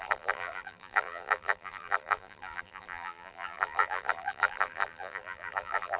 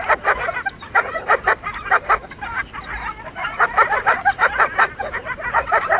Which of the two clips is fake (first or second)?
first